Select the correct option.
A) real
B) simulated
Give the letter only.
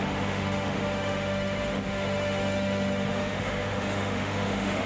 B